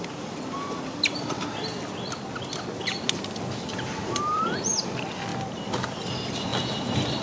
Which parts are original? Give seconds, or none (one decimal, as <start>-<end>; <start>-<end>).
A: 1.7-3.9; 5.3-6.1; 6.5-7.2